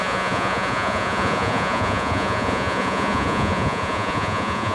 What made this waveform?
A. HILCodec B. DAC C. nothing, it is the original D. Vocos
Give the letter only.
D